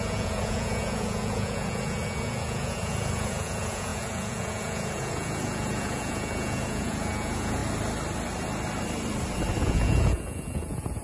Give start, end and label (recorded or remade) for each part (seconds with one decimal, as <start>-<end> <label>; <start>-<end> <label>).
0.0-7.6 remade; 7.6-9.6 recorded; 9.6-11.0 remade